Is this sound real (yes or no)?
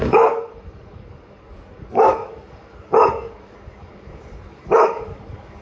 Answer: no